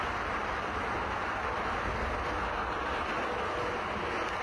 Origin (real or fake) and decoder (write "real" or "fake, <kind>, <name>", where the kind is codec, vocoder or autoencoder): real